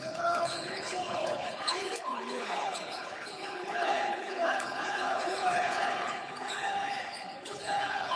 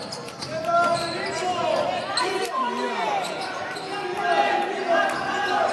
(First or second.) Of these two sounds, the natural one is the second